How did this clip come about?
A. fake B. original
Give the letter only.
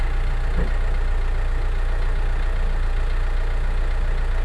B